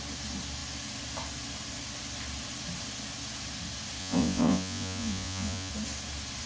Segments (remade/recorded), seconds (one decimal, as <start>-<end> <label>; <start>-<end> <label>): 0.0-4.0 recorded; 4.0-5.7 remade; 5.7-6.5 recorded